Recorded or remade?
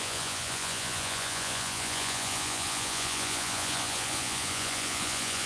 remade